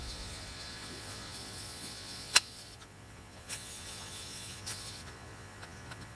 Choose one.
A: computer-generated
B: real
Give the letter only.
A